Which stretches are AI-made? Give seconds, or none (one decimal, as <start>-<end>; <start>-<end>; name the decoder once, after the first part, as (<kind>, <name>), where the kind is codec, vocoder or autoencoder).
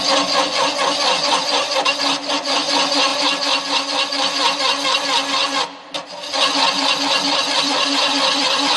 0.0-1.7 (vocoder, Vocos); 2.3-3.1; 7.6-8.8